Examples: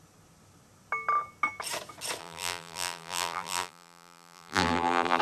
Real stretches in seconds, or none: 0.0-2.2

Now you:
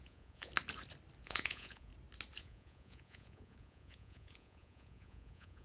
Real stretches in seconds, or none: 0.5-1.2; 1.9-2.4

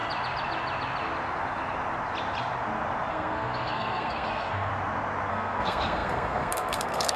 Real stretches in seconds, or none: 0.0-3.1; 4.7-5.3

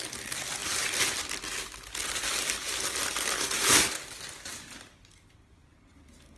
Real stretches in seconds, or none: 0.0-6.4

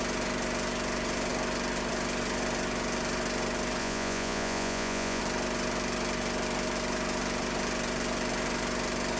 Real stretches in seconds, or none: 0.0-3.8; 5.2-9.2